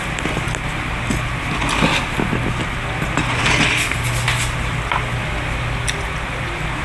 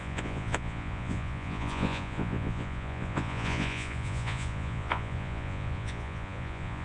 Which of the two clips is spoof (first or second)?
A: second